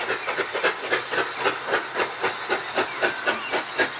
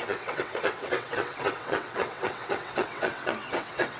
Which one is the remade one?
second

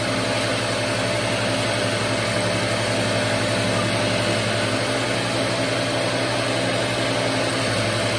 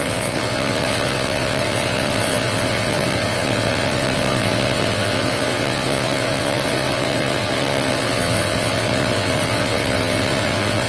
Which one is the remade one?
second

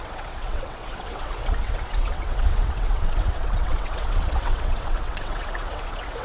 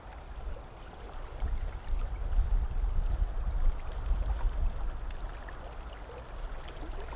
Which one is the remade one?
first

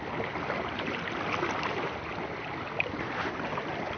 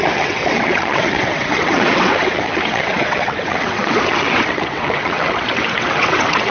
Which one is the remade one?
second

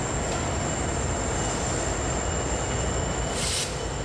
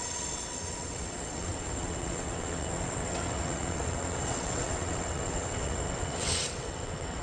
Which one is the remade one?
second